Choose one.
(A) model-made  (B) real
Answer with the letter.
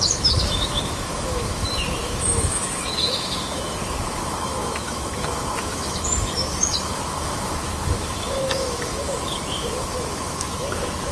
A